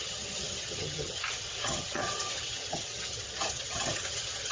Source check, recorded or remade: remade